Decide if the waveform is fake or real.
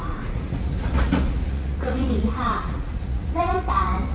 fake